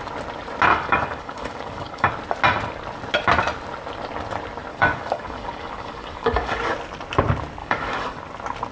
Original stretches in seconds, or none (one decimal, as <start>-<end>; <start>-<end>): 0.0-0.7; 2.1-4.7; 6.6-7.6; 8.2-8.7